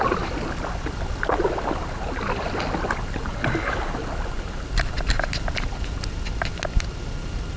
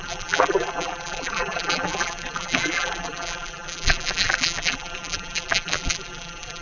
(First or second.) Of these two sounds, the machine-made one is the second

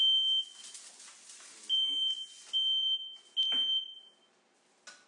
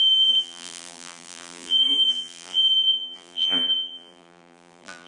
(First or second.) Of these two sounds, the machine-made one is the second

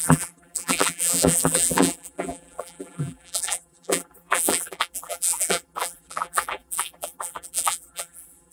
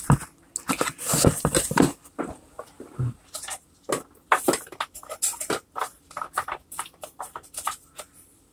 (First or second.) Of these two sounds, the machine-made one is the first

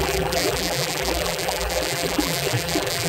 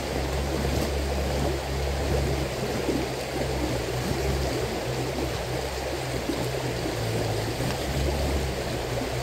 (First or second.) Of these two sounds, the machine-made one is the first